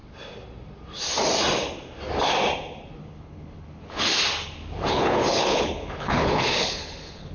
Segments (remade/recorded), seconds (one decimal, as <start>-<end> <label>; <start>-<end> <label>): 0.0-3.0 recorded; 3.0-4.1 remade; 4.1-4.9 recorded; 4.9-7.3 remade

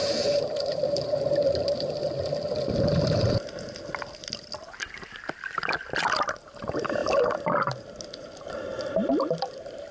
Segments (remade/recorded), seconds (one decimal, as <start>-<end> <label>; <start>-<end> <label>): 0.0-9.9 recorded

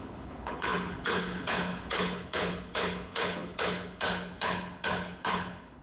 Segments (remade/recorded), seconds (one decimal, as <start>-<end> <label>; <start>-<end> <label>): 0.0-5.8 remade

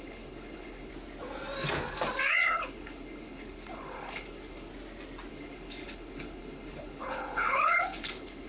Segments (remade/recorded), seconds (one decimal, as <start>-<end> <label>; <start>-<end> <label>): 0.0-0.9 remade; 0.9-2.3 recorded; 2.3-4.7 remade; 4.7-5.3 recorded; 5.3-8.5 remade

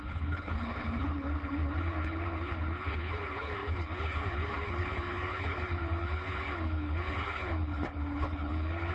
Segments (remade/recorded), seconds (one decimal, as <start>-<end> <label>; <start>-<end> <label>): 0.0-8.9 remade

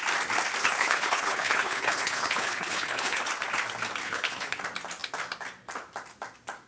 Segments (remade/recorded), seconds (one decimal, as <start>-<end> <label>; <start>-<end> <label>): 0.0-0.6 recorded; 0.6-3.2 remade; 3.2-4.0 recorded; 4.0-4.6 remade; 4.6-6.7 recorded

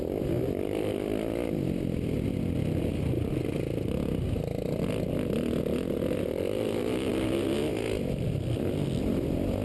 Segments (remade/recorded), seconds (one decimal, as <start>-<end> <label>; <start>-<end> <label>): 0.0-9.6 recorded

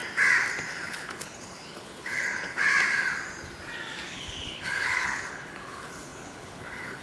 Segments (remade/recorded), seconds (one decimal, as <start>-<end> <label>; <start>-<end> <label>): 0.0-0.7 recorded; 0.7-2.7 remade; 2.7-4.1 recorded; 4.1-7.0 remade